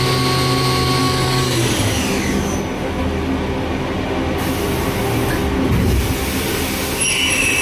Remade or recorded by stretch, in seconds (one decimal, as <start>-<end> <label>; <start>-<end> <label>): 0.0-1.0 recorded; 1.0-2.0 remade; 2.0-7.6 recorded